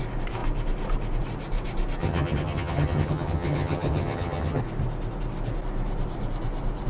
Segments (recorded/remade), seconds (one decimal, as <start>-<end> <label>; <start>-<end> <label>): 0.0-2.0 recorded; 2.0-4.6 remade; 4.6-6.9 recorded